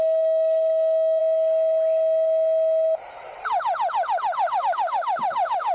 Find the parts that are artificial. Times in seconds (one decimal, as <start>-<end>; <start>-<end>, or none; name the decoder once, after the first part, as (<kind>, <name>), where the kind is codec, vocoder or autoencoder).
0.0-1.2 (autoencoder, DAC-VAE); 4.6-5.7